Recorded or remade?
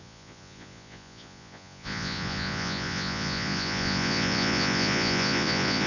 remade